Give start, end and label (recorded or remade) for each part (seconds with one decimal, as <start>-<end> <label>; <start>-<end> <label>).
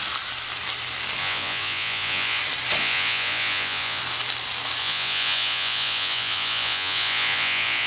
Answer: 0.0-1.2 recorded; 1.2-2.4 remade; 2.4-2.8 recorded; 2.8-4.0 remade; 4.0-4.8 recorded; 4.8-7.9 remade